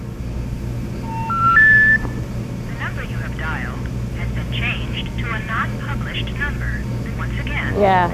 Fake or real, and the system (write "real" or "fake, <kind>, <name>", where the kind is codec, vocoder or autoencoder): real